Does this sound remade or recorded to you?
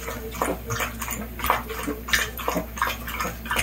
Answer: recorded